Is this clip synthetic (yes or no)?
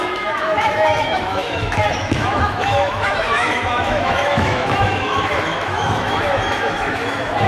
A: yes